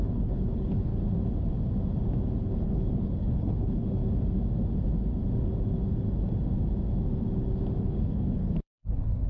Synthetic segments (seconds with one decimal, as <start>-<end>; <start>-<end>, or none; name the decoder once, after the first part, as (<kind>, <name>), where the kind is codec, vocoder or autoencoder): 0.0-0.9 (codec, HILCodec); 2.4-4.0; 7.8-9.3